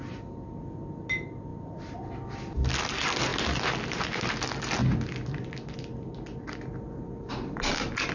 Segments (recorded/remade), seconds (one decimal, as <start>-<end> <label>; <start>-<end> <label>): 0.0-8.1 recorded